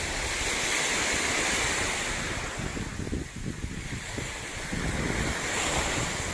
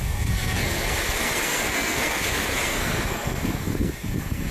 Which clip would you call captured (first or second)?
first